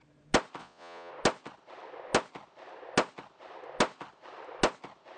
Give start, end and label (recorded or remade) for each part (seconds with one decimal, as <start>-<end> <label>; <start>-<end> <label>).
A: 0.0-0.6 recorded; 0.6-1.1 remade; 1.1-5.2 recorded

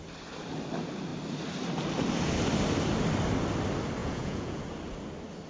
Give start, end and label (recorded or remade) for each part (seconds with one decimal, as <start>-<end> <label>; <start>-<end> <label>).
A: 0.0-4.0 recorded; 4.0-4.6 remade; 4.6-5.5 recorded